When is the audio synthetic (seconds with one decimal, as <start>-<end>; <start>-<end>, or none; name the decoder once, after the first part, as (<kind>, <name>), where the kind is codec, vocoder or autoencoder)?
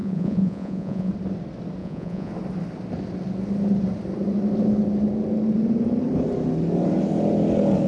0.0-1.1 (vocoder, Vocos); 1.8-2.3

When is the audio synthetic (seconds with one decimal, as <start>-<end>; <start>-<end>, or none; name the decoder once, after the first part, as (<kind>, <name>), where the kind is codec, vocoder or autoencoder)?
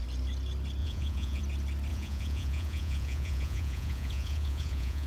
0.8-1.4 (vocoder, Vocos); 1.9-5.1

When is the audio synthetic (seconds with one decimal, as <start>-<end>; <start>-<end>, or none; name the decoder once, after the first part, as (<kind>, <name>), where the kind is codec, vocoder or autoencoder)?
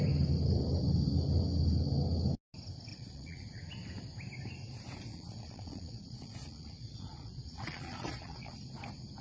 2.9-3.6 (vocoder, Vocos); 5.1-8.5